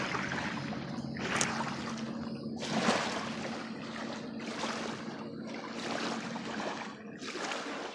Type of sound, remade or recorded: recorded